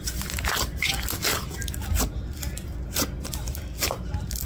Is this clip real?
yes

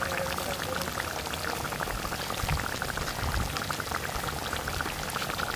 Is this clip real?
yes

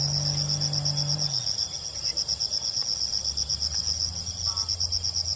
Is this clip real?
yes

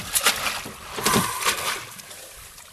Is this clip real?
yes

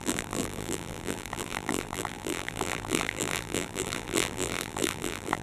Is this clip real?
no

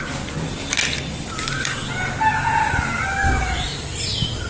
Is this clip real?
yes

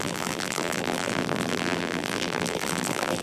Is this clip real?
no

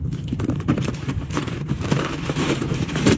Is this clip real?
no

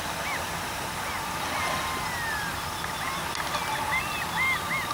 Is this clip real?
yes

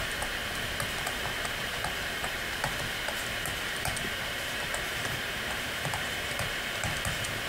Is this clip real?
no